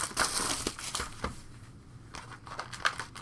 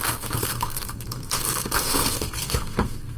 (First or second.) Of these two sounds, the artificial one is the second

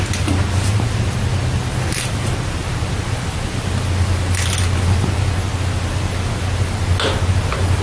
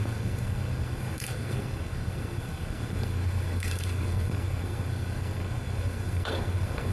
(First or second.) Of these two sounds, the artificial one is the second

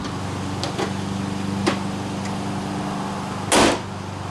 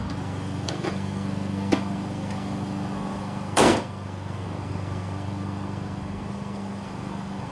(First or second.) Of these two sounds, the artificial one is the second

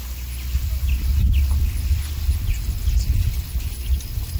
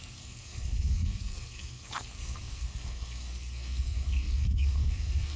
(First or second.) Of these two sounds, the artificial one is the second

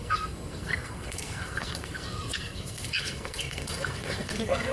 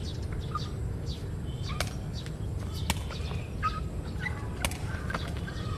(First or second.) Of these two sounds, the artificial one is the first